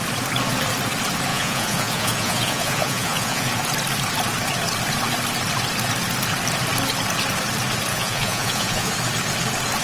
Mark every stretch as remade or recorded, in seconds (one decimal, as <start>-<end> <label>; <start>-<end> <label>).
0.0-1.3 recorded; 1.3-3.5 remade; 3.5-7.9 recorded; 7.9-8.9 remade; 8.9-9.8 recorded